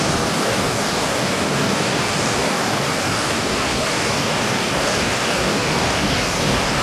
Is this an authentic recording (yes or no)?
no